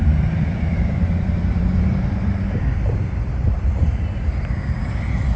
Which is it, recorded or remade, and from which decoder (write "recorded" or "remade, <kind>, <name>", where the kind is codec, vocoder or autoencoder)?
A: remade, vocoder, BigVGAN v2